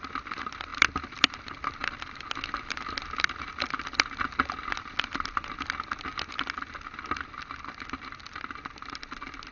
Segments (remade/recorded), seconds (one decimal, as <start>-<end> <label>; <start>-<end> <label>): 0.0-9.5 recorded